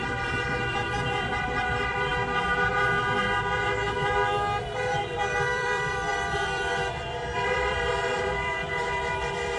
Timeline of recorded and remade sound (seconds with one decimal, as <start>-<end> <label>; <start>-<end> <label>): 0.0-2.1 remade; 2.1-5.0 recorded; 5.0-9.6 remade